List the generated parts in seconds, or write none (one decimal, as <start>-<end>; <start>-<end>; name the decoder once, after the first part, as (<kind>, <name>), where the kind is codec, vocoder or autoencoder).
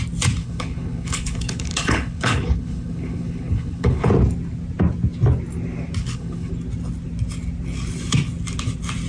0.4-4.1 (codec, HILCodec); 6.0-6.5